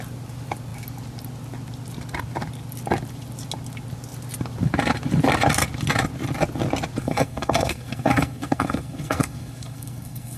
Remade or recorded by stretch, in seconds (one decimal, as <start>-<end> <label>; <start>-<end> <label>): 0.0-7.0 recorded; 7.0-10.4 remade